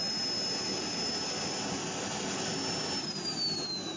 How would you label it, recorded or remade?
recorded